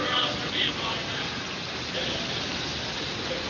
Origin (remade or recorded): remade